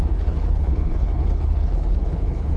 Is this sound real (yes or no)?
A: no